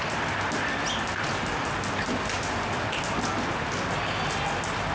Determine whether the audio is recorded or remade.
recorded